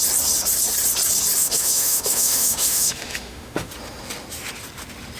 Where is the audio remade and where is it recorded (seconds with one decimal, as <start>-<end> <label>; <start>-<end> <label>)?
0.0-1.4 recorded; 1.4-3.7 remade; 3.7-5.2 recorded